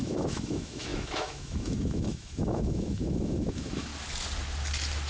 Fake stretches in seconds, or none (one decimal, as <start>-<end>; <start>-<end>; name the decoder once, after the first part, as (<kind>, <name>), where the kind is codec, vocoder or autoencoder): 0.0-3.9 (autoencoder, DAC-VAE)